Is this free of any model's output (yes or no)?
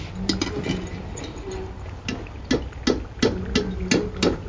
yes